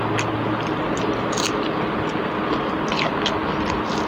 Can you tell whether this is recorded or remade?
recorded